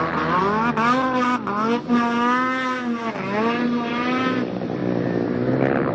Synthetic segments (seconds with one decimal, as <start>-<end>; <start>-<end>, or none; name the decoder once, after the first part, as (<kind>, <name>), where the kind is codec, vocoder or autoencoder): 0.0-0.4 (vocoder, BigVGAN v2); 3.9-4.8